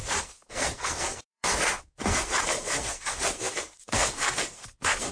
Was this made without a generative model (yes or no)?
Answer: no